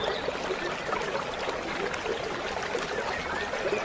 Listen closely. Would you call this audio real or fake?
real